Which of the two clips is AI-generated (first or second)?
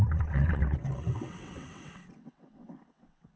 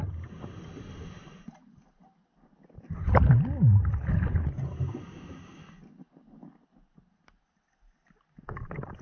first